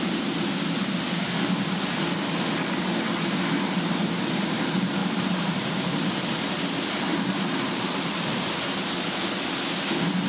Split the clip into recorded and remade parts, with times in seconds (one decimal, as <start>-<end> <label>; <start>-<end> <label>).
0.0-5.0 recorded; 5.0-6.2 remade; 6.2-7.1 recorded; 7.1-7.8 remade; 7.8-10.3 recorded